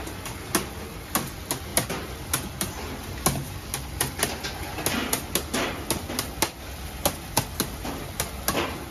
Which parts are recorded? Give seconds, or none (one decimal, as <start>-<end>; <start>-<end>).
0.0-1.7; 2.5-8.9